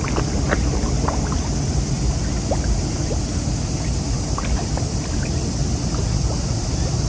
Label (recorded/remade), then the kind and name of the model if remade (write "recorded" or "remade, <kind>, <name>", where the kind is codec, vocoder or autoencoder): recorded